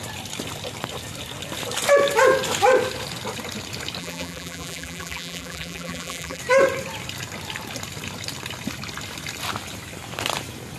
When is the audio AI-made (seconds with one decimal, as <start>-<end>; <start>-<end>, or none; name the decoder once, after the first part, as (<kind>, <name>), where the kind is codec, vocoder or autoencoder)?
4.0-6.4 (vocoder, BigVGAN v2)